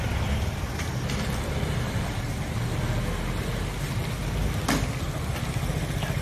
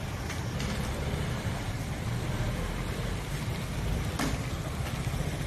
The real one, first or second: first